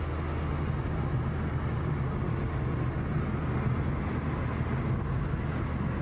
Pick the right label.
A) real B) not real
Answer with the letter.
A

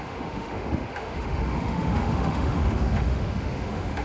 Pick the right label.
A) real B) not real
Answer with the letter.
B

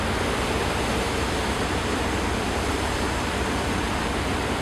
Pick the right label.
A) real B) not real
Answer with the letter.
A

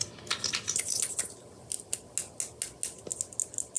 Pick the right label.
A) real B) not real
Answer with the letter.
A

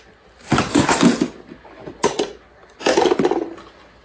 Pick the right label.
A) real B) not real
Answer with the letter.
A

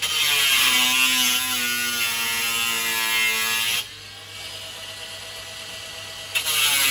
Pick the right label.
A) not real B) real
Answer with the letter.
B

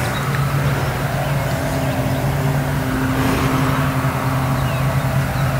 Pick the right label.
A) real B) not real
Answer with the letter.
A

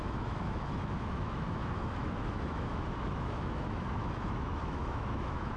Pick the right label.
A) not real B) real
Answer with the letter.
A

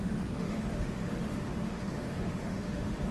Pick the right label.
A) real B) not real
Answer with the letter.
B